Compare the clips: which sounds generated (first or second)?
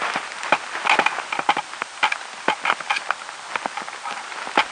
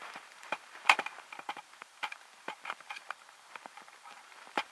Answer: second